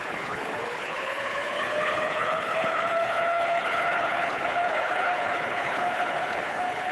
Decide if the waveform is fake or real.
fake